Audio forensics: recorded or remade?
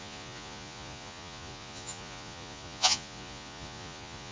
remade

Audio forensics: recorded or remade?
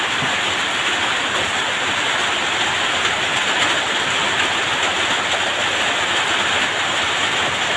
recorded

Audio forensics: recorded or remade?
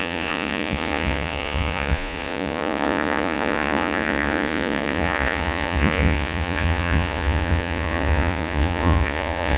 remade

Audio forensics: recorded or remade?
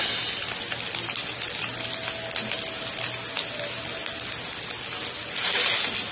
recorded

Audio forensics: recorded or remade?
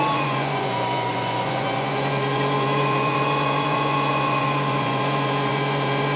remade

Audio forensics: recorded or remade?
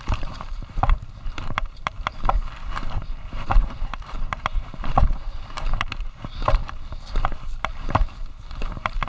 remade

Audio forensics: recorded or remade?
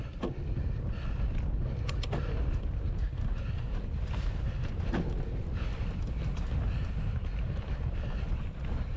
recorded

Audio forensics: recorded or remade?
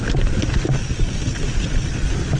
recorded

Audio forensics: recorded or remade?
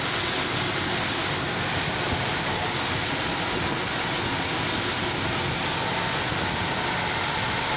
recorded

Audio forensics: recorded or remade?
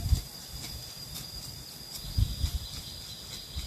recorded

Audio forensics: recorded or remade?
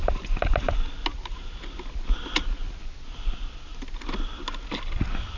recorded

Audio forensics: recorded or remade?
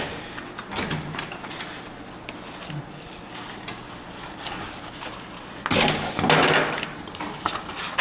recorded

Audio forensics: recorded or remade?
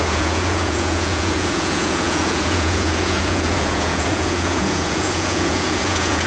remade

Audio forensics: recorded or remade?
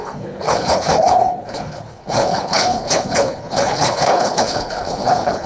remade